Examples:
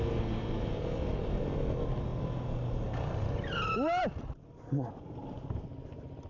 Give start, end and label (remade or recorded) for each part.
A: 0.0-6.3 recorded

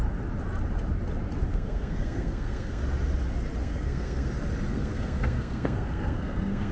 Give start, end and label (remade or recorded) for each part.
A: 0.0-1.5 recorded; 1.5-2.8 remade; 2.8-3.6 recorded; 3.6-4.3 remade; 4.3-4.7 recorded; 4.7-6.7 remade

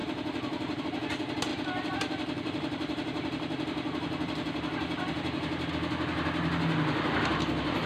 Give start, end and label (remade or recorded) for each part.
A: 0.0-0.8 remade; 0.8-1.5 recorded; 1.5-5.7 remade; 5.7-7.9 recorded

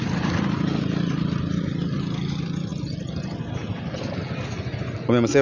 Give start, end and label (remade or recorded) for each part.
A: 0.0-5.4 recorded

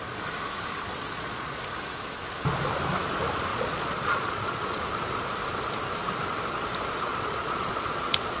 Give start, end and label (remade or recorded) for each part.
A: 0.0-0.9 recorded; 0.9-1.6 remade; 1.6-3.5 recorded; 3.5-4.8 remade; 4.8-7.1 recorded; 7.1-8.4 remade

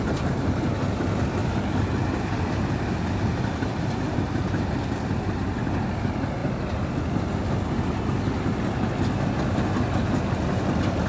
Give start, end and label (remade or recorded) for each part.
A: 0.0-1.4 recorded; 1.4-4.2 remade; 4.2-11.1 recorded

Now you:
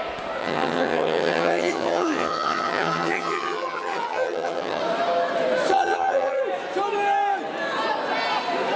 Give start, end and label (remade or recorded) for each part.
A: 0.0-0.4 recorded; 0.4-4.8 remade; 4.8-5.7 recorded; 5.7-6.4 remade; 6.4-8.8 recorded